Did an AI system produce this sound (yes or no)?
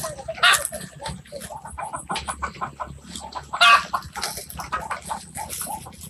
no